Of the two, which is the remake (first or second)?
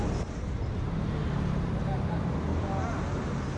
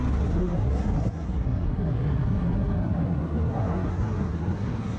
second